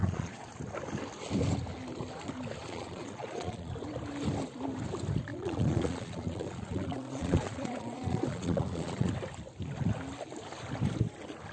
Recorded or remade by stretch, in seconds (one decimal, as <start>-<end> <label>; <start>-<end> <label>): 0.0-0.5 remade; 0.5-2.6 recorded; 2.6-3.7 remade; 3.7-5.3 recorded; 5.3-9.1 remade; 9.1-11.5 recorded